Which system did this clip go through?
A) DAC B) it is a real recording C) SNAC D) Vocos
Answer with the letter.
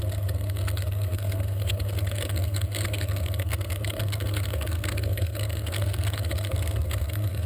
C